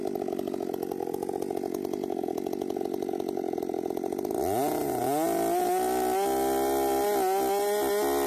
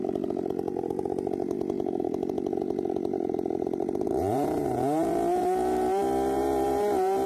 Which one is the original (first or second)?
first